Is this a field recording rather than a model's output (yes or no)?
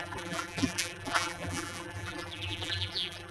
no